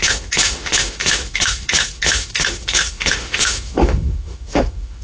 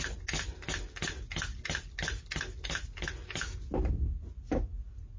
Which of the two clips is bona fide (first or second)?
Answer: second